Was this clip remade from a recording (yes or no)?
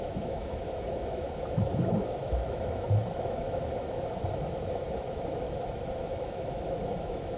yes